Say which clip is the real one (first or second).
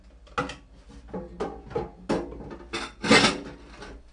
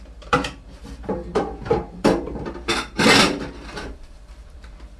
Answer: first